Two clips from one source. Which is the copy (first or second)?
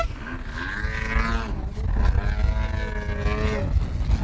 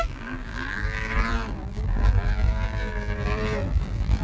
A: second